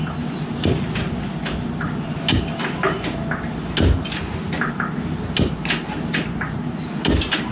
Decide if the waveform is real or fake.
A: real